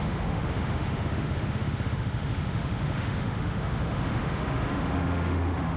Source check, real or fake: fake